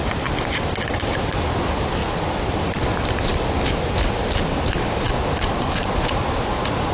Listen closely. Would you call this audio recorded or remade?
recorded